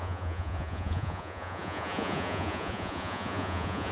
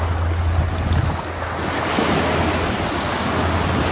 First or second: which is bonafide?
second